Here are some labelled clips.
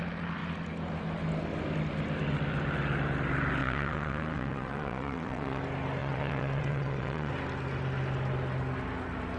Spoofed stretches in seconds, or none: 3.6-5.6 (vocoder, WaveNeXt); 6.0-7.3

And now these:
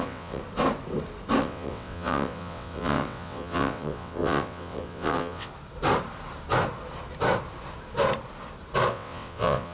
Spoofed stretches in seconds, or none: 0.0-0.4 (vocoder, WaveNeXt); 1.4-5.5; 8.9-9.7

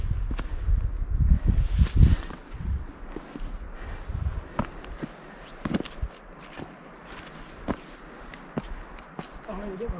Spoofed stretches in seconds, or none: 2.1-2.9 (vocoder, WaveNeXt)

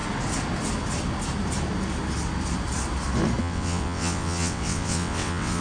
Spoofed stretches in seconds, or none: 3.4-5.6 (vocoder, WaveNeXt)

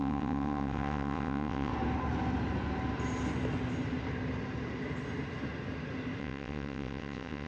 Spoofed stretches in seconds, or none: 0.0-1.7 (vocoder, WaveNeXt); 6.2-7.5

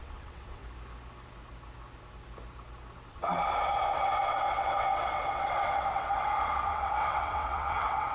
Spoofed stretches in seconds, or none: 0.0-0.6 (vocoder, WaveNeXt); 3.1-8.1